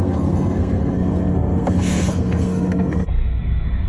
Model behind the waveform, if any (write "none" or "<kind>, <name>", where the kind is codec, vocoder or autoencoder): codec, SNAC